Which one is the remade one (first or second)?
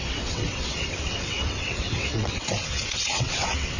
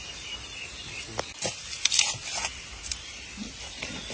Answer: first